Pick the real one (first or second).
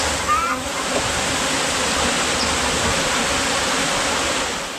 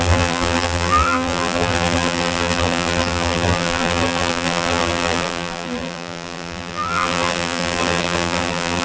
first